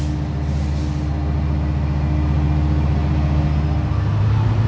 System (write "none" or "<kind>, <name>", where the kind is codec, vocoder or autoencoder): none